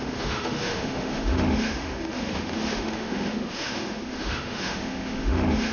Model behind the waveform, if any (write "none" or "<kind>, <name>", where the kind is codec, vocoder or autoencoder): autoencoder, DAC-VAE